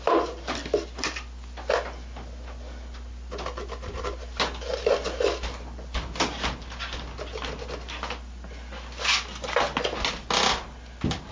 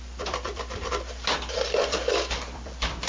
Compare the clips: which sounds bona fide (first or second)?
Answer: first